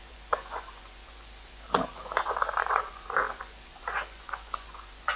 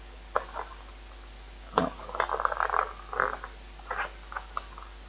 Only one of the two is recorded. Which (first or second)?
second